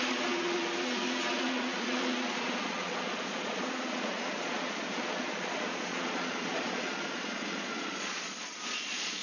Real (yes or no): no